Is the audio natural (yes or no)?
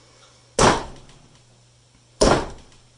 yes